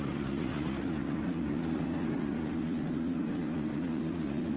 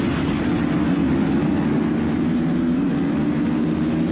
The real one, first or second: second